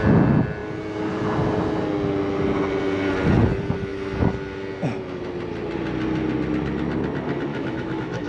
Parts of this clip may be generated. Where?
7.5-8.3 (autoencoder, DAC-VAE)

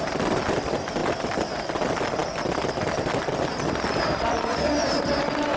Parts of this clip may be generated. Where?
none

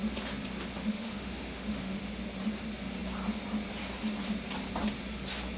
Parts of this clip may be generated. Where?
0.7-2.2 (autoencoder, DAC-VAE)